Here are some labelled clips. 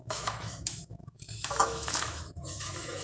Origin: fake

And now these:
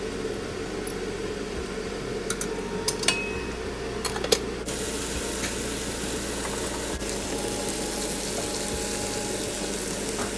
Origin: real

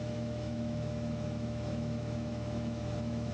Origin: fake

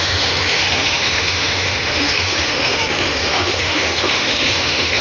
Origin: fake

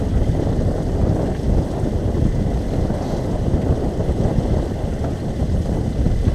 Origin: real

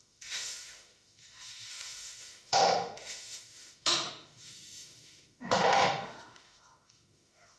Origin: fake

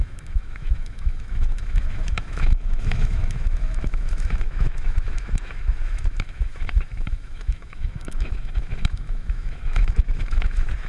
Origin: fake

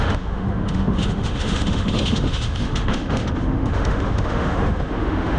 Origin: fake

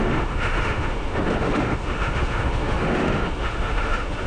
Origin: fake